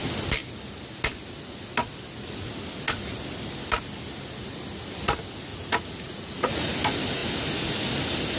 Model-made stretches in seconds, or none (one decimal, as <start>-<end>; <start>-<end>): 5.5-6.7

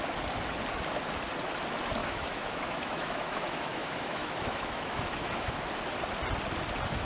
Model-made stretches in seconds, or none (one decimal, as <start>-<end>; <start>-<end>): 2.0-5.5

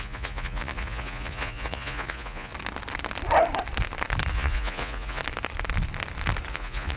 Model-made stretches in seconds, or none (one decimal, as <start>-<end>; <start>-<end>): 0.0-2.5; 4.3-5.2; 6.5-7.0

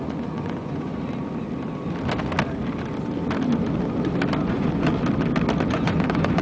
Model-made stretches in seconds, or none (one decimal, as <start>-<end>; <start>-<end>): 0.0-0.9; 4.5-4.9; 5.7-6.4

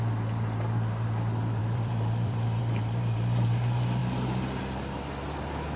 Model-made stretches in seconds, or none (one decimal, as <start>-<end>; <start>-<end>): 1.6-2.6

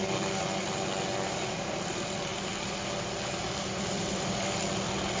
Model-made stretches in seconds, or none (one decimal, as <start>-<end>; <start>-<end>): none

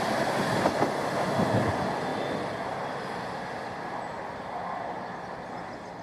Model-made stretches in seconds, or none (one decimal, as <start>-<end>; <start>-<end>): none

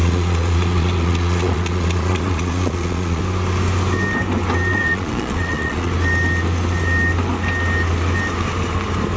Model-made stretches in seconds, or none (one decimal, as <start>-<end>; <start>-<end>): 0.0-3.2; 4.7-5.9